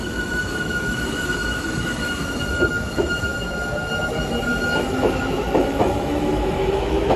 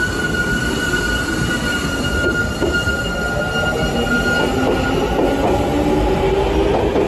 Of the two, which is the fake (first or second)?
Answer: first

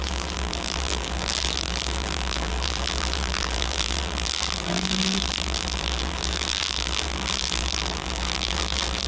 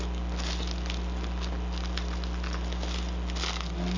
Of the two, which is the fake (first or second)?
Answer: first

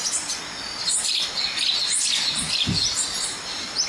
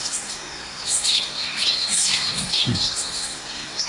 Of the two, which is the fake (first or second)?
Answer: second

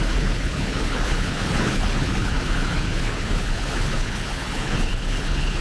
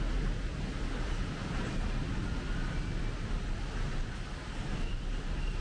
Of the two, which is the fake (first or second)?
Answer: first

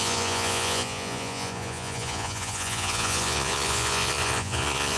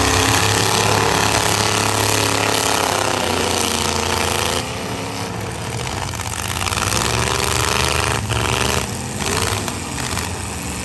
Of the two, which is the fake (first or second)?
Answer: first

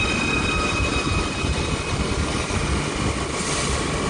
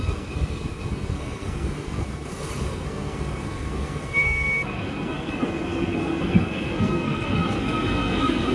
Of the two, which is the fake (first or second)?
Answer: second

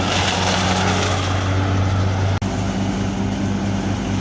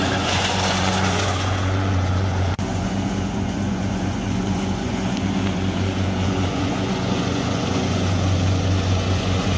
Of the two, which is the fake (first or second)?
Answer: second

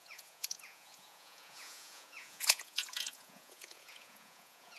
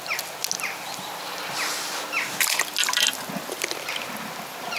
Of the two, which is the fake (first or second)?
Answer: first